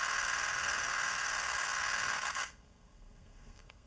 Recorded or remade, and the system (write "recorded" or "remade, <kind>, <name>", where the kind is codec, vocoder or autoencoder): remade, codec, SNAC